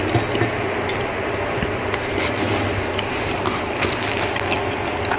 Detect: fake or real real